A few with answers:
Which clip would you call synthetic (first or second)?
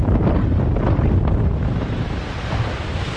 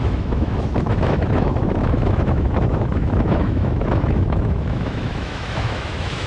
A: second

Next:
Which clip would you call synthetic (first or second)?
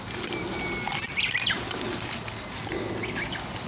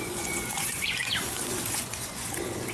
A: second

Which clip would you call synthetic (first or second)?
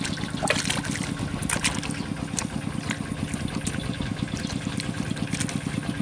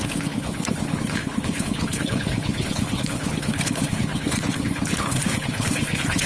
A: second